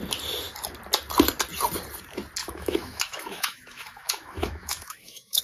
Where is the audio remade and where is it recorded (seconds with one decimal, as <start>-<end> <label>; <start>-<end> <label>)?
0.0-2.4 recorded; 2.4-5.4 remade